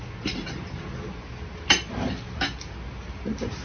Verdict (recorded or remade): recorded